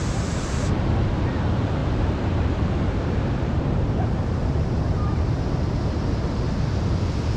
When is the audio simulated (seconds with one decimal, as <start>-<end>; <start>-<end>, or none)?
0.0-4.4; 6.2-7.4